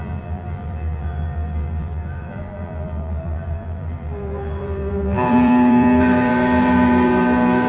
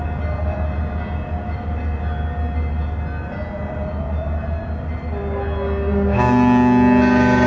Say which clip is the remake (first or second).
first